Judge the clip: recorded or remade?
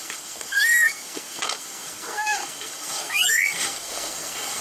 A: remade